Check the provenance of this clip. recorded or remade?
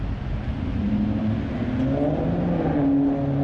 recorded